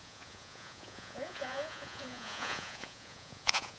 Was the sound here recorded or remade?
remade